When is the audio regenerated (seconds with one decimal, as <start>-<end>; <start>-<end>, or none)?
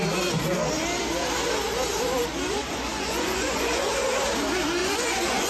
2.6-3.9; 4.8-5.5